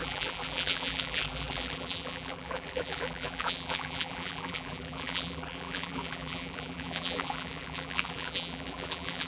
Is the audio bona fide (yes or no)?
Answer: no